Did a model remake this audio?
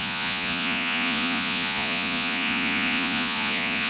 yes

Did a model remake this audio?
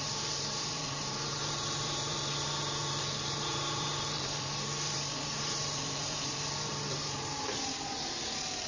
yes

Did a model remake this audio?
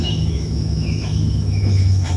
yes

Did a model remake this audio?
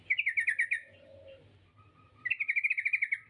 no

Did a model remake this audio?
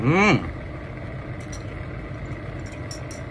no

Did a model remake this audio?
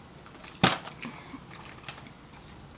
no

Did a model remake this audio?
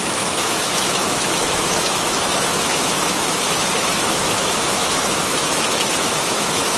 yes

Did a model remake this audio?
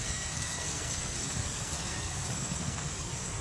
yes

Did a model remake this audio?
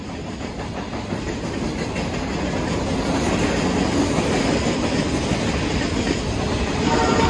no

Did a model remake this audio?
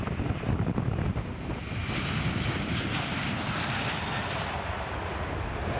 no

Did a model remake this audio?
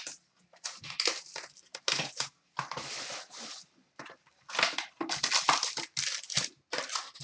no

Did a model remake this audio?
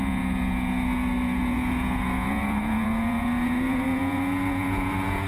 yes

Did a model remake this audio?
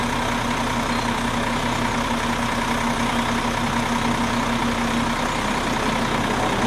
no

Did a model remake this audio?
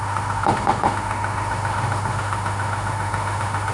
yes